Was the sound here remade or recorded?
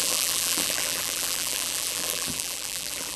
remade